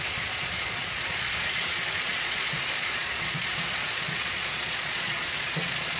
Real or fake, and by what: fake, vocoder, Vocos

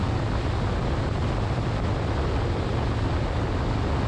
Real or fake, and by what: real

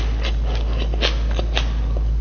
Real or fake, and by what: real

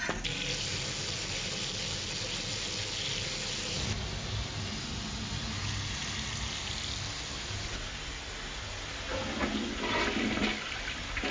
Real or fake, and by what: real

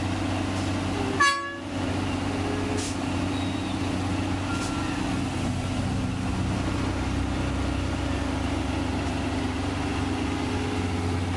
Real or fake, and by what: real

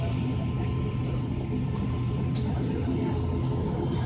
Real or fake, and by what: real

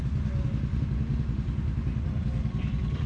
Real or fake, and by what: real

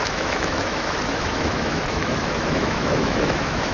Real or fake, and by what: fake, autoencoder, DAC-VAE